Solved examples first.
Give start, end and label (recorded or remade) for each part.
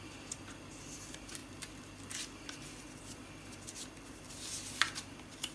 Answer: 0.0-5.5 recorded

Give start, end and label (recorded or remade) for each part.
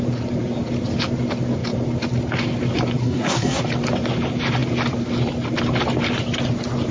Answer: 0.0-3.0 recorded; 3.0-3.6 remade; 3.6-6.9 recorded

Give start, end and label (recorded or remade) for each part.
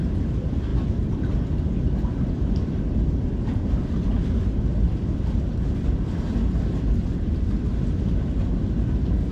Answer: 0.0-9.3 recorded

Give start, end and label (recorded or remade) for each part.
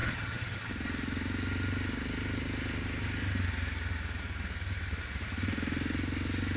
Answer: 0.0-0.7 remade; 0.7-6.6 recorded